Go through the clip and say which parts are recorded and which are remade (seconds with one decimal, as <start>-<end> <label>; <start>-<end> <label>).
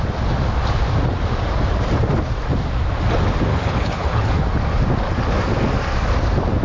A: 0.0-3.5 recorded; 3.5-4.3 remade; 4.3-6.6 recorded